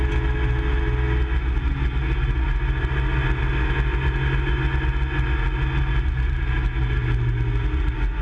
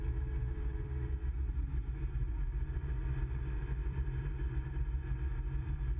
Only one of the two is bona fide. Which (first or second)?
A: first